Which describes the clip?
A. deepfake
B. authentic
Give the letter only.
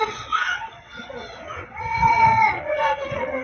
A